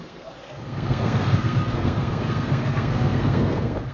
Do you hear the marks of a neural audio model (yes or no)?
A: yes